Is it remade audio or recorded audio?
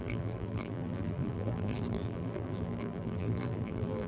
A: remade